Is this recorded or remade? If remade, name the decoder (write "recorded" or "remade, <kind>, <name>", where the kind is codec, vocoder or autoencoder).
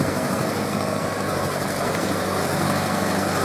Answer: remade, codec, SNAC